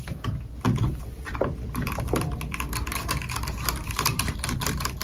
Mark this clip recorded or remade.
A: remade